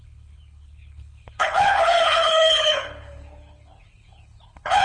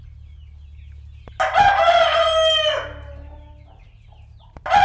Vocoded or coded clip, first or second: first